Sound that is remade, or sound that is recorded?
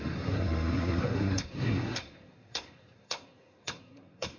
remade